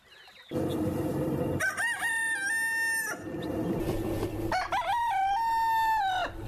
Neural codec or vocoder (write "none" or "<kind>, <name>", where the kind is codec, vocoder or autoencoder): none